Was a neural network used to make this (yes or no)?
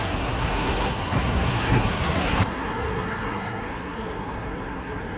yes